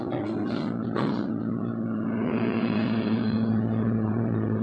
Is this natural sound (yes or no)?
no